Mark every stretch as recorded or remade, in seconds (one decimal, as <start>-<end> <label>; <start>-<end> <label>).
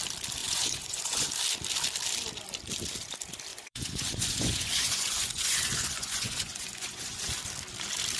0.0-0.4 recorded; 0.4-1.3 remade; 1.3-3.5 recorded; 3.5-7.4 remade; 7.4-8.2 recorded